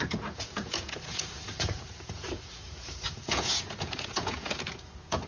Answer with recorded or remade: remade